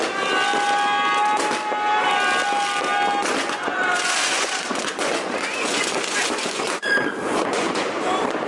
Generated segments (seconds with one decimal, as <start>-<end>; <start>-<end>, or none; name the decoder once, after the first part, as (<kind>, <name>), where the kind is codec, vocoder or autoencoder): 3.4-7.9 (vocoder, Vocos)